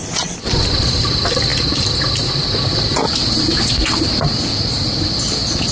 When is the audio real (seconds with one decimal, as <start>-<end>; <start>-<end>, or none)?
0.0-5.7